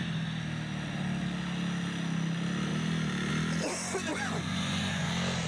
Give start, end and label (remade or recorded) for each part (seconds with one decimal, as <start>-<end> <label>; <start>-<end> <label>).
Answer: 0.0-4.1 recorded; 4.1-5.1 remade; 5.1-5.5 recorded